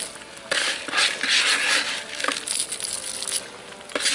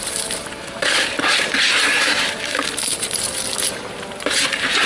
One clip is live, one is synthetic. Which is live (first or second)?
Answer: first